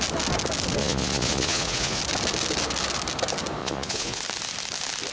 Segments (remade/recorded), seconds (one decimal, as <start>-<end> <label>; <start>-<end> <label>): 0.0-0.8 recorded; 0.8-2.0 remade; 2.0-3.6 recorded; 3.6-4.2 remade; 4.2-5.1 recorded